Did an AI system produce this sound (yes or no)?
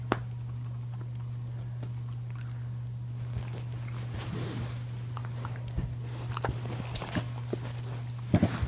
no